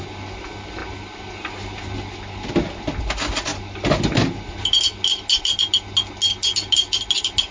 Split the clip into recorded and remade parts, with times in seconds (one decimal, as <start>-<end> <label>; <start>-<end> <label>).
0.0-7.5 recorded